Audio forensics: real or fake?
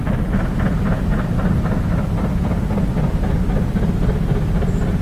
real